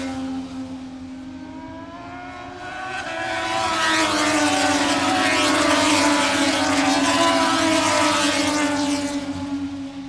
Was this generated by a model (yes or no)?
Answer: no